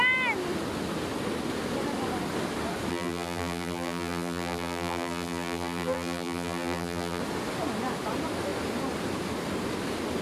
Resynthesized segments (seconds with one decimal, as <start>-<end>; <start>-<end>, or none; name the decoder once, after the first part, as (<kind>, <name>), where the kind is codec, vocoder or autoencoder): 2.9-7.2 (vocoder, BigVGAN v2)